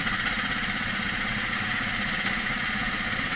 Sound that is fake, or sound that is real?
fake